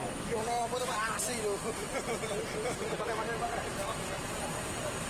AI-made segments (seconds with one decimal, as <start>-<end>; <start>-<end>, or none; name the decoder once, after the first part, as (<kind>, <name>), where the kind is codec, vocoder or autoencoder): none